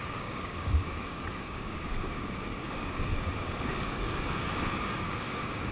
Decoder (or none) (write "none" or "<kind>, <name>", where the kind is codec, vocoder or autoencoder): codec, DAC